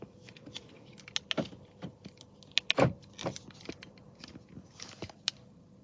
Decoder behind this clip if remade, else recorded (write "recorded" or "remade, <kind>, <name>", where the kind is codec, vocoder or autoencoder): recorded